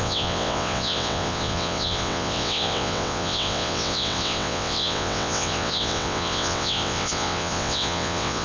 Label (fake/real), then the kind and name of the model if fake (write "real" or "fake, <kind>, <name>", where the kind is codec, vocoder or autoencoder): fake, vocoder, WaveNeXt